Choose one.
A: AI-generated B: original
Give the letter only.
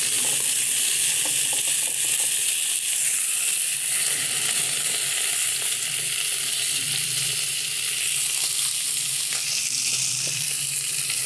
B